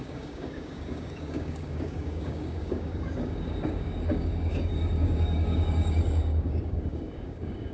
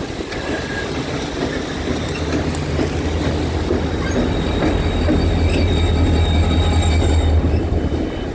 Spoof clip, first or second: first